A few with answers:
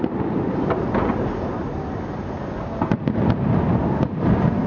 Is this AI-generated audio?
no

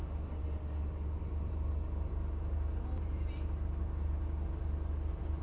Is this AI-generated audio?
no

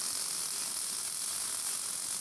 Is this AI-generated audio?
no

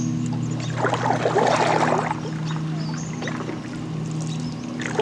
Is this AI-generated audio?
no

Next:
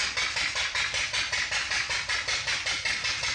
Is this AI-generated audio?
no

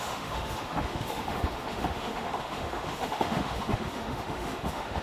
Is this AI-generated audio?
yes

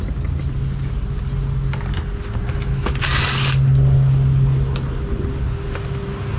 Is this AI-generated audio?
no